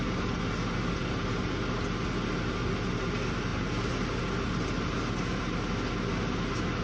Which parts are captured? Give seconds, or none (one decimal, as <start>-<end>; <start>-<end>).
0.0-6.8